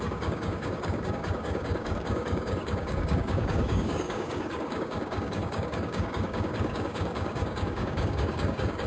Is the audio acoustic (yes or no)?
no